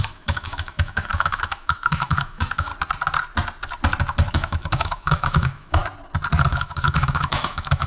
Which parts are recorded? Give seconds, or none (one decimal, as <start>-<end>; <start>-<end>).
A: 2.7-4.3; 5.8-6.5